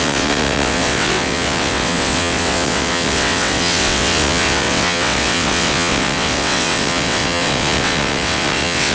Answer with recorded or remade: remade